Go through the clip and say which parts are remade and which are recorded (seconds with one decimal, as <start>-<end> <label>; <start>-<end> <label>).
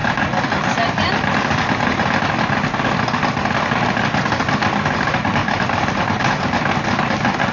0.0-7.5 recorded